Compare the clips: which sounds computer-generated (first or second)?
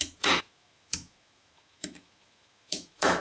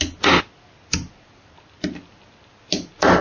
first